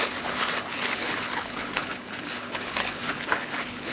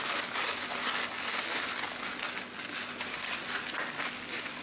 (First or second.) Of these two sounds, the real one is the second